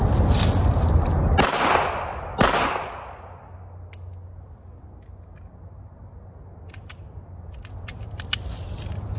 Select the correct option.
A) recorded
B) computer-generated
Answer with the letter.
A